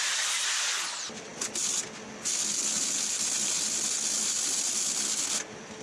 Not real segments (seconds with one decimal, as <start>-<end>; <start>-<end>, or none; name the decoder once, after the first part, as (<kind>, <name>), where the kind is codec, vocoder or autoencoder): none